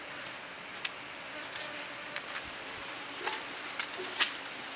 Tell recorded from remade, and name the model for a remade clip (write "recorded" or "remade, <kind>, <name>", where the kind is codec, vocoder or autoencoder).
recorded